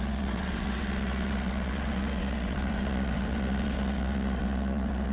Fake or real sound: fake